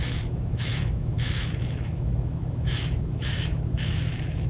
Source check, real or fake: fake